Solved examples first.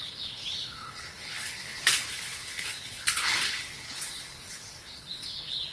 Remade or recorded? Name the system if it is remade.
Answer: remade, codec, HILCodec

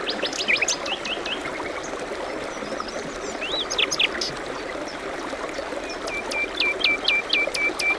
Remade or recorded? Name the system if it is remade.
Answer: recorded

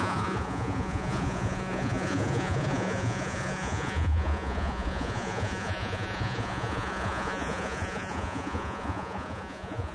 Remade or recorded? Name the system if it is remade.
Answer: remade, vocoder, Vocos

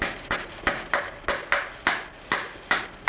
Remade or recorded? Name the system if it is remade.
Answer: recorded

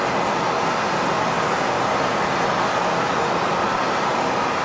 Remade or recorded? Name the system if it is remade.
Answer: recorded